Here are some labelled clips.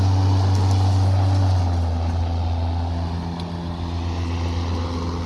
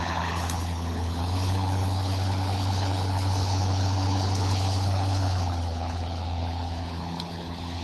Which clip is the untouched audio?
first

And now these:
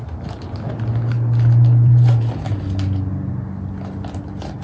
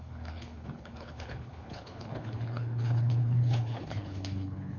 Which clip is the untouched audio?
first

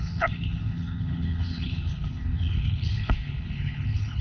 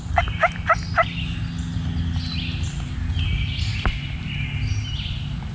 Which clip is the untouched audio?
second